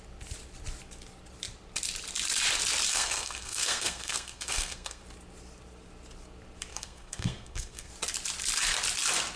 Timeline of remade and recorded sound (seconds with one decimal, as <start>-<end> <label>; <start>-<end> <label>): 0.0-2.9 recorded; 2.9-5.0 remade; 5.0-6.7 recorded; 6.7-7.9 remade; 7.9-9.4 recorded